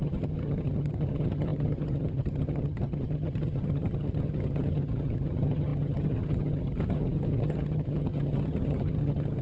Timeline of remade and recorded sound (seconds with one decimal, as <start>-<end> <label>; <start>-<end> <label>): 0.0-9.4 remade